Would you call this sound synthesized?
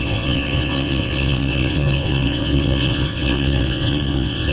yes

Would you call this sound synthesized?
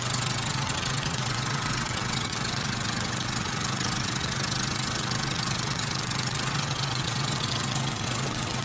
yes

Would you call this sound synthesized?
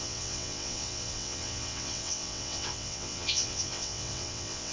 yes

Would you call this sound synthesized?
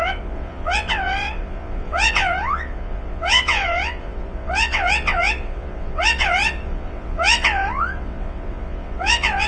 yes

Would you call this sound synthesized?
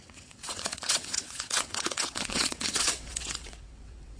yes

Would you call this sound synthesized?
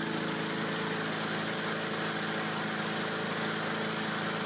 no